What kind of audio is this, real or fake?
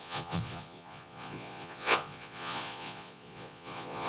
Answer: fake